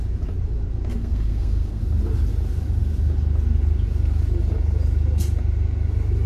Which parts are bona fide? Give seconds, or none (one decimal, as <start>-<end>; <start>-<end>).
0.0-0.9; 1.8-6.3